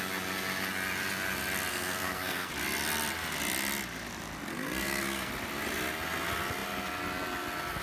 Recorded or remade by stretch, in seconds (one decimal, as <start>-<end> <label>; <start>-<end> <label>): 0.0-1.7 recorded; 1.7-2.5 remade; 2.5-4.5 recorded; 4.5-5.3 remade; 5.3-7.8 recorded